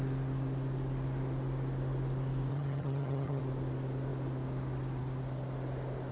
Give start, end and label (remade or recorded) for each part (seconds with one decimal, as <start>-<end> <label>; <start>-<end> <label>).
0.0-2.5 recorded; 2.5-3.4 remade; 3.4-6.1 recorded